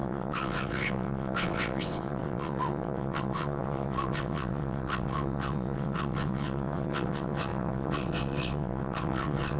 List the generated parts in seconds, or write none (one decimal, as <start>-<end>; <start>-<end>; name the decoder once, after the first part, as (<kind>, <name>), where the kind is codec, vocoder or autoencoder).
0.0-9.6 (vocoder, WaveNeXt)